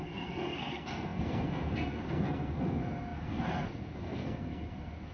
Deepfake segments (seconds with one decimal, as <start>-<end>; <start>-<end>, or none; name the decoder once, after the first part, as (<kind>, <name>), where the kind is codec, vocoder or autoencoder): 0.0-5.1 (codec, SNAC)